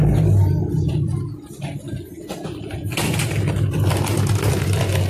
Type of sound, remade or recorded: recorded